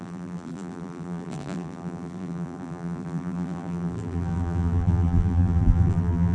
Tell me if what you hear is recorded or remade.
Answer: remade